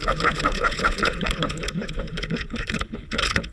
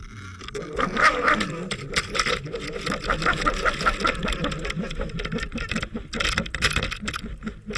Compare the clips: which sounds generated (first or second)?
first